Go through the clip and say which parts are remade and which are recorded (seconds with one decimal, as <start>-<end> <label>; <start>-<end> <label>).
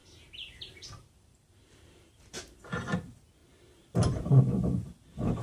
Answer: 0.0-2.8 remade; 2.8-3.4 recorded; 3.4-4.4 remade; 4.4-5.4 recorded